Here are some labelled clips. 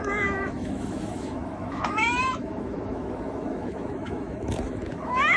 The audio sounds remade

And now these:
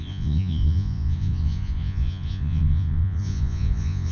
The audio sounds remade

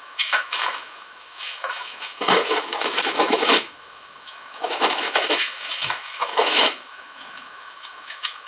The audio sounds remade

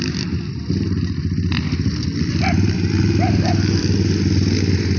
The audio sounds recorded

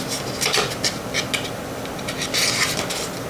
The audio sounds recorded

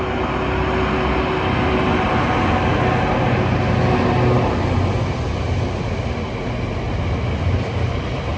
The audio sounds recorded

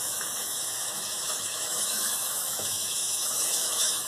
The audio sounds remade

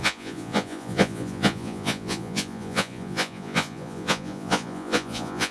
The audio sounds remade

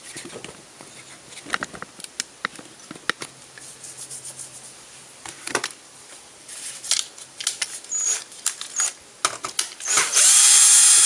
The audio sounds recorded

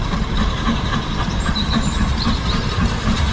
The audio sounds remade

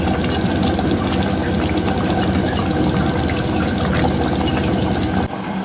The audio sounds recorded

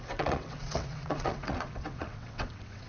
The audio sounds remade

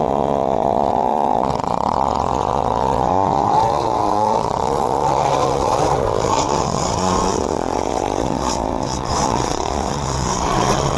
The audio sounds remade